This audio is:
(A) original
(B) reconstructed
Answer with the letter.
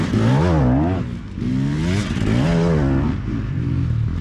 A